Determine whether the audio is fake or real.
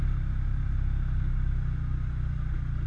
real